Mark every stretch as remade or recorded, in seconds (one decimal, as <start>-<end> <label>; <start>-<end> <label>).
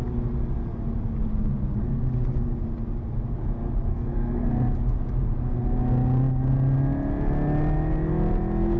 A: 0.0-3.9 recorded; 3.9-4.5 remade; 4.5-8.8 recorded